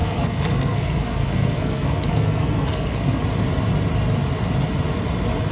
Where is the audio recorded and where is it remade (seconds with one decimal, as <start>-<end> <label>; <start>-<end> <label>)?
0.0-3.2 remade; 3.2-5.5 recorded